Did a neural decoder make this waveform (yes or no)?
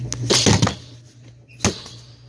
no